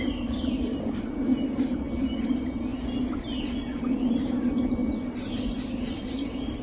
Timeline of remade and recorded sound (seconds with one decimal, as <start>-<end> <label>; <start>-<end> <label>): 0.0-6.6 recorded